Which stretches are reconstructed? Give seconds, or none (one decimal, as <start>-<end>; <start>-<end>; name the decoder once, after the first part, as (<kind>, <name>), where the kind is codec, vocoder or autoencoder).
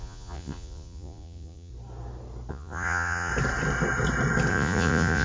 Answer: 0.0-1.7 (vocoder, Vocos); 2.5-3.3; 4.5-5.2